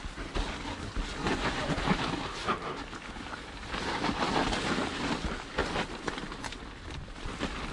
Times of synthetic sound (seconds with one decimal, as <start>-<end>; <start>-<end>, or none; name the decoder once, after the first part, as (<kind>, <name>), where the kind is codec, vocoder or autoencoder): 1.2-1.8 (vocoder, Vocos)